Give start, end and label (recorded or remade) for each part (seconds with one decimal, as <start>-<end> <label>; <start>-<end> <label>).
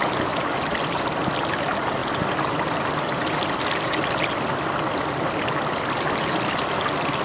0.0-7.2 recorded